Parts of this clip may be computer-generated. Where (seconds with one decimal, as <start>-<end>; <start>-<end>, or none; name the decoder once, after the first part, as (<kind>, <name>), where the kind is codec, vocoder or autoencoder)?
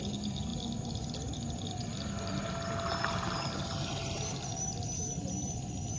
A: none